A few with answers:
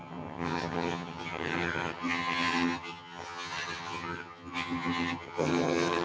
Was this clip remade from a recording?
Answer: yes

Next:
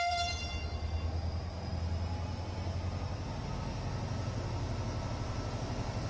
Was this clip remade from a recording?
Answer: no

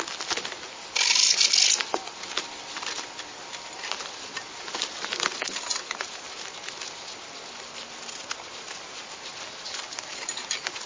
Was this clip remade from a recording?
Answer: no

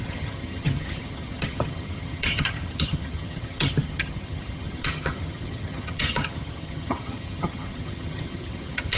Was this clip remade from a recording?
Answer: yes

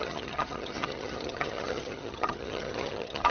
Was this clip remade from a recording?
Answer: yes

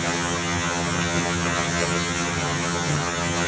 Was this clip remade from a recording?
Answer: yes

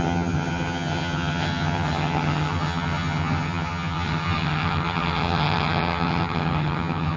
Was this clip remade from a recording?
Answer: yes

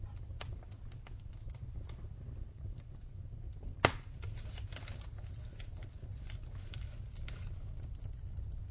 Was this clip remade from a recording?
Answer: no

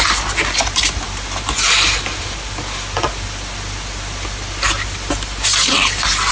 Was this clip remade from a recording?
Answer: no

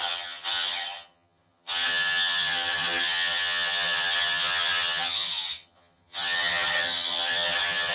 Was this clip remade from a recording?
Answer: yes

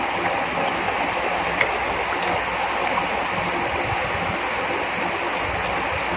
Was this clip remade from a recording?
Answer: no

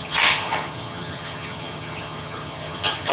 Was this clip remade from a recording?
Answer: yes